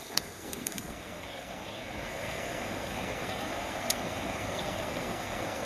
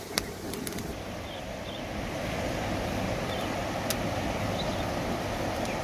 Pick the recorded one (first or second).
second